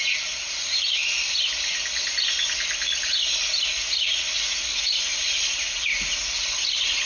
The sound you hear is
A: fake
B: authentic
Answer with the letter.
B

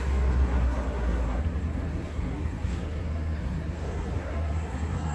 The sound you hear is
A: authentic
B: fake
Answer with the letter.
B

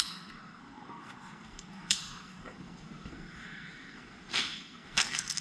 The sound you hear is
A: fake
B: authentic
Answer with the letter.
A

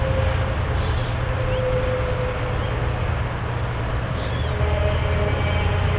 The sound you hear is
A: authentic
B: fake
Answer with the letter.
A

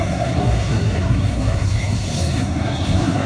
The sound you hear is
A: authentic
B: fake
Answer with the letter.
B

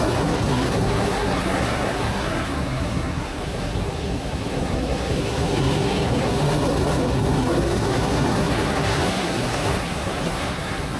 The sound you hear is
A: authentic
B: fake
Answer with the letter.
B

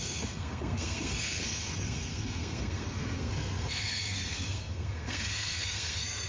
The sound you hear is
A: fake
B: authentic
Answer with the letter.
A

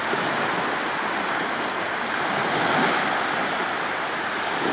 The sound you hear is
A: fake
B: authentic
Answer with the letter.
B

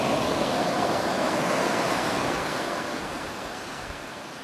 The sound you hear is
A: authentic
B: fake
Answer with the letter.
B